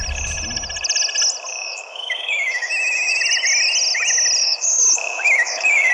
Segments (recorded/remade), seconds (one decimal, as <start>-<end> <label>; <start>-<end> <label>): 0.0-1.5 recorded; 1.5-3.2 remade; 3.2-4.4 recorded; 4.4-5.9 remade